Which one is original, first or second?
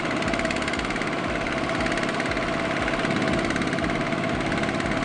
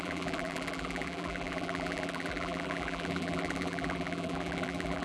first